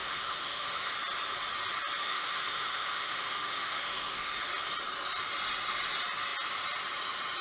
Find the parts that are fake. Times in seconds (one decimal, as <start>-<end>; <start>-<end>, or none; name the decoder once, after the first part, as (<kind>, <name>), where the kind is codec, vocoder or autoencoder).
0.0-0.9 (autoencoder, DAC-VAE); 2.0-4.4